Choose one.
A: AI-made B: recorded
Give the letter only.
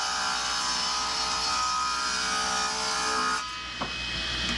B